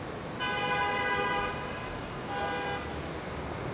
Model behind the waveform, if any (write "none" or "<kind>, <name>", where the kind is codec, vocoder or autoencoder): none